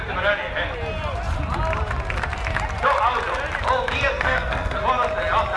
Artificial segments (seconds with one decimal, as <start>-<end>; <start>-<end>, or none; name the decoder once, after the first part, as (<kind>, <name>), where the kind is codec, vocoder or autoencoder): 4.1-4.8 (codec, SNAC)